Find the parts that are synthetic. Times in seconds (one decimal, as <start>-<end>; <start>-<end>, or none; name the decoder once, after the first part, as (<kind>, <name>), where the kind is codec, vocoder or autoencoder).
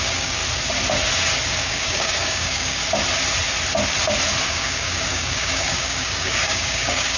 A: 0.0-0.4 (codec, DAC); 1.6-2.8; 4.5-7.2